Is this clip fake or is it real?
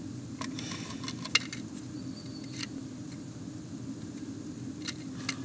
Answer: real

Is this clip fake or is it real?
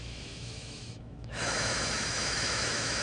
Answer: fake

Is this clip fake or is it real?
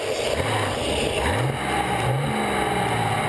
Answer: real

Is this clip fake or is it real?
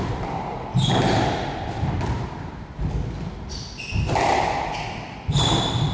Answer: fake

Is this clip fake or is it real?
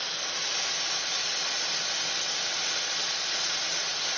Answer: real